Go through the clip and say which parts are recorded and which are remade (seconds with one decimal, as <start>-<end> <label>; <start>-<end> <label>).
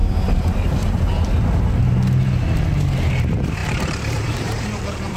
0.0-3.1 recorded; 3.1-5.2 remade